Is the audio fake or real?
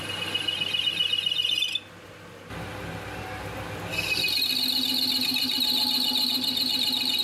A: real